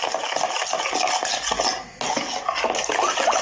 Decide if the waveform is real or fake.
real